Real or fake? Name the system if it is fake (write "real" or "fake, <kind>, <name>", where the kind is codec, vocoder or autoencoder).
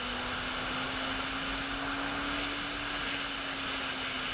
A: real